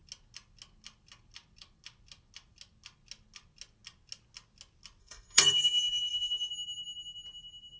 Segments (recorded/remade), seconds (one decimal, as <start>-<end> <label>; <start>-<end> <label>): 0.0-5.0 recorded; 5.0-6.5 remade; 6.5-7.8 recorded